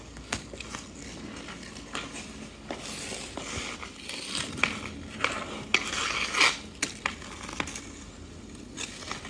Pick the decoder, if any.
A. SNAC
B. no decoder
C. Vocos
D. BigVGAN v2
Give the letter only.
B